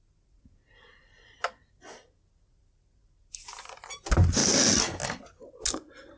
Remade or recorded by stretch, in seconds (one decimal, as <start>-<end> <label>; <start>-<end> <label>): 0.0-6.2 recorded